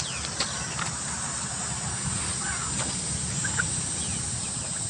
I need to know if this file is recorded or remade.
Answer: recorded